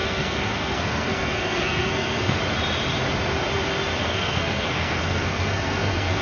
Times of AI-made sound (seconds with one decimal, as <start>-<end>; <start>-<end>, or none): 0.0-2.4; 4.0-6.2